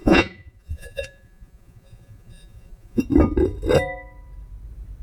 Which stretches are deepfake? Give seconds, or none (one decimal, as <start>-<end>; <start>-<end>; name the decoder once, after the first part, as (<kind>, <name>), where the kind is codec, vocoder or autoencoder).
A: 0.0-3.0 (vocoder, Vocos)